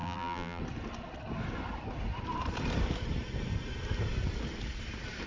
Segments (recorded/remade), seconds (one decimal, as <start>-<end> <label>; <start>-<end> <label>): 0.0-0.6 remade; 0.6-5.3 recorded